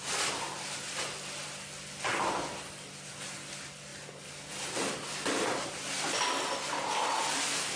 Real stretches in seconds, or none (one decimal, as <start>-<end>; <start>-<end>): 0.0-7.8